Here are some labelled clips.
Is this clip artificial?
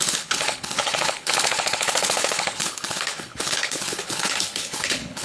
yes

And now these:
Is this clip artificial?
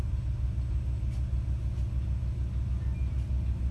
no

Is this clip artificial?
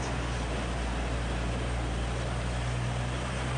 no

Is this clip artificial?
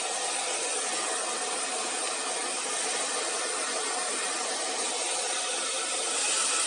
no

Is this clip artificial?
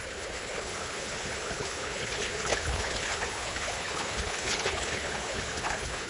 yes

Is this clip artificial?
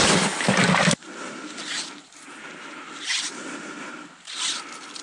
no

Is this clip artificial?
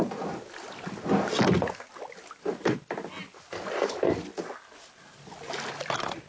no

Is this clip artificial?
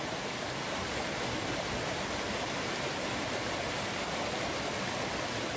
no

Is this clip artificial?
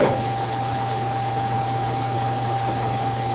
yes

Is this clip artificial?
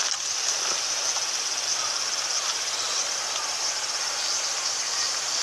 no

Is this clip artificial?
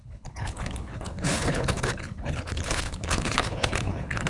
yes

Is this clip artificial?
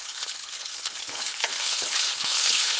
yes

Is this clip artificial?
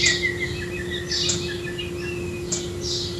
no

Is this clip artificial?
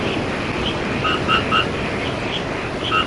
no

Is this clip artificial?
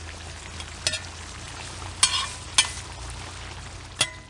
no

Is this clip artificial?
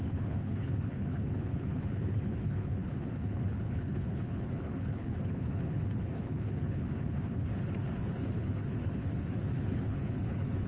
yes